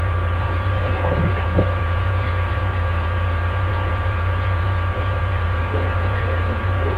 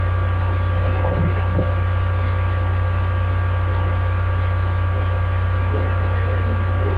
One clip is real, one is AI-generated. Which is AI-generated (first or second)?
first